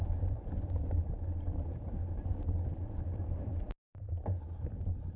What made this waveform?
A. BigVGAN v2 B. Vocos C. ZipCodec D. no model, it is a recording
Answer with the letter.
A